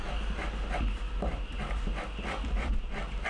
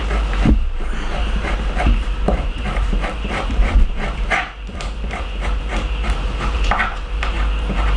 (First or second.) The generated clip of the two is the second